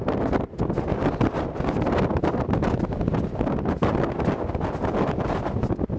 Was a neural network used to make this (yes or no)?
no